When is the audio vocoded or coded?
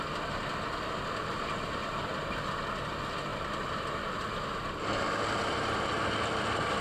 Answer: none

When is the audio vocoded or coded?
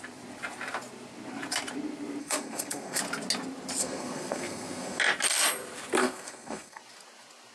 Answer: 2.2-3.0; 3.8-5.0; 6.0-6.8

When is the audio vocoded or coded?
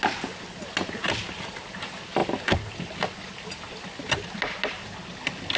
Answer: none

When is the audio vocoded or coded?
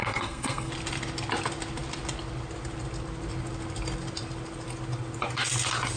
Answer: 0.0-0.7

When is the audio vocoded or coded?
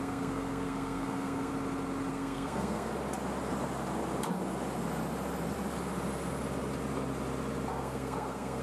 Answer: 0.0-1.5; 2.1-2.9; 7.7-8.6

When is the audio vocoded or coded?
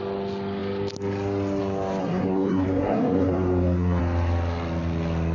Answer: 2.0-4.0